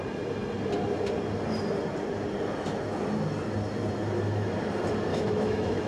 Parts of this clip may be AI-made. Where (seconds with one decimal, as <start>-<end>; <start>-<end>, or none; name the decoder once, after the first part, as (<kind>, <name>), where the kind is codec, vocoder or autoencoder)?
5.1-5.9 (autoencoder, DAC-VAE)